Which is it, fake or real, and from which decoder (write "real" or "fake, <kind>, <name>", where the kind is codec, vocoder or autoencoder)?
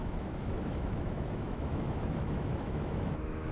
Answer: fake, autoencoder, DAC-VAE